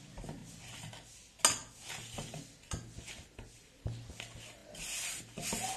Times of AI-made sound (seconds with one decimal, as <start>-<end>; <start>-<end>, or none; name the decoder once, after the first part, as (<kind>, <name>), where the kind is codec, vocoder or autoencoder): none